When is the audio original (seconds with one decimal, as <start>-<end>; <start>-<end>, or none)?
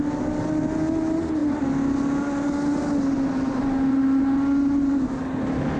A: 0.0-5.8